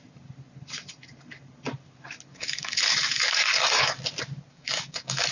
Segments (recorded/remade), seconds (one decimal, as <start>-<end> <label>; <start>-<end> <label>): 0.0-2.3 recorded; 2.3-4.0 remade; 4.0-4.5 recorded; 4.5-5.3 remade